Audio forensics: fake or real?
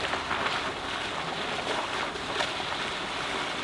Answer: real